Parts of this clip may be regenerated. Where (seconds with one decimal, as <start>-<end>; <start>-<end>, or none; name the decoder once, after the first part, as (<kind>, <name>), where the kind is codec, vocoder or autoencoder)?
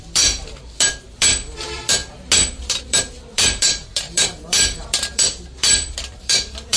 0.0-2.0 (vocoder, BigVGAN v2); 2.5-6.8